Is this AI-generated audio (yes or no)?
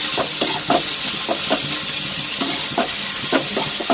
no